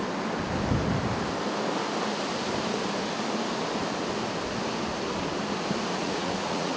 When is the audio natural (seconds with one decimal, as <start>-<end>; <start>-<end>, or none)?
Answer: 0.0-6.0